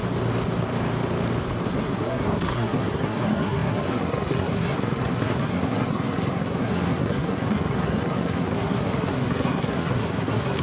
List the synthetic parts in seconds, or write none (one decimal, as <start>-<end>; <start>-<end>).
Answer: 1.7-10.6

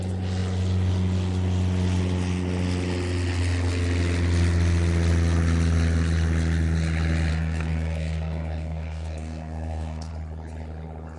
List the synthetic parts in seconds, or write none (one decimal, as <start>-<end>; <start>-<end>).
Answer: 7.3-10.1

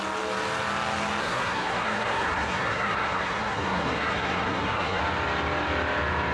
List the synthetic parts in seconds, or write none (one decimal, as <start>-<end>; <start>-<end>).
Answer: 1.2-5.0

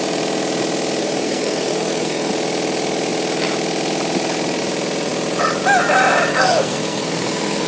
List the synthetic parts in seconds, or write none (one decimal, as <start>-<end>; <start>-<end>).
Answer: 1.0-2.3; 6.3-7.7

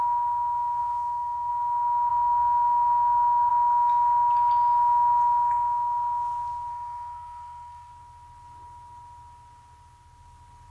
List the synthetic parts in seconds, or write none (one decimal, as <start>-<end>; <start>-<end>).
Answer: 0.8-1.5; 2.1-3.5; 6.7-7.9